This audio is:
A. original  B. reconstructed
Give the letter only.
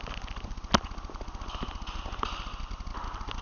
A